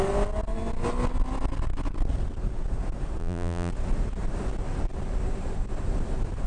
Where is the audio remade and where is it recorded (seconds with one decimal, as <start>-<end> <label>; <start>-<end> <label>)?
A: 0.0-3.2 recorded; 3.2-3.7 remade; 3.7-6.5 recorded